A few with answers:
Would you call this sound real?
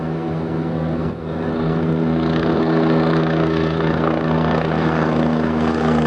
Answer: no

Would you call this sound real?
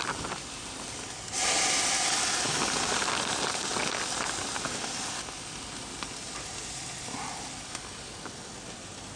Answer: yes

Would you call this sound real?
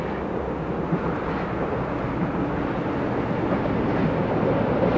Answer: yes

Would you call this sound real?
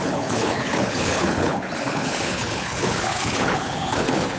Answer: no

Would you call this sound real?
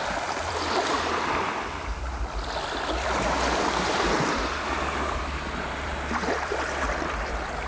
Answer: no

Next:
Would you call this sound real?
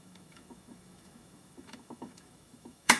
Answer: no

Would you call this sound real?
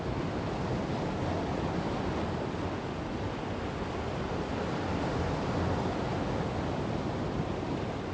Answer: yes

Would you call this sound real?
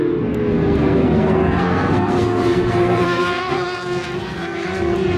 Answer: no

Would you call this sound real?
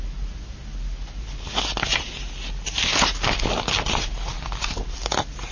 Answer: yes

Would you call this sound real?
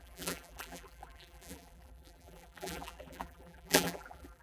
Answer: no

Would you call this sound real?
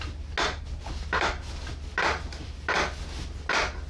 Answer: yes